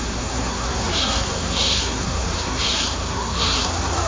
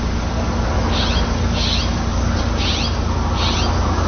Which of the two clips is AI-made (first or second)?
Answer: first